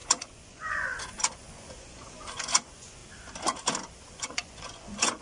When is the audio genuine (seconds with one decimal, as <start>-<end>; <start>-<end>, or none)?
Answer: 3.0-4.2